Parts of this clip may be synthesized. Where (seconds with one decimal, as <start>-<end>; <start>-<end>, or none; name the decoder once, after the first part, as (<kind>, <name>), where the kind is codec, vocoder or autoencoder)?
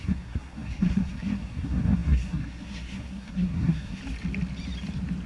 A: 0.0-4.0 (codec, SNAC)